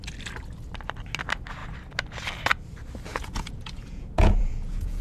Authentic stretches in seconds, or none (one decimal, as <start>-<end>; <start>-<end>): 0.0-3.1